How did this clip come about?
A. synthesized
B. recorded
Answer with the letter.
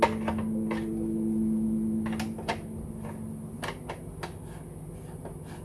B